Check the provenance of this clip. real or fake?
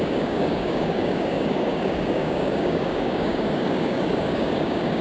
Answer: fake